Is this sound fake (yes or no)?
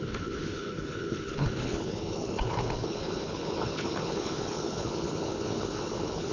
yes